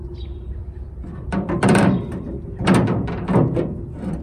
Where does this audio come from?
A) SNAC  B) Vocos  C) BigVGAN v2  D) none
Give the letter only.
C